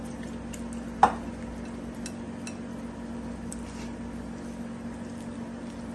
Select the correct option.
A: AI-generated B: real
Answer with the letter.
B